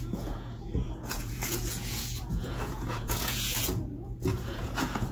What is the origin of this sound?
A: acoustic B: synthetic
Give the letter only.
B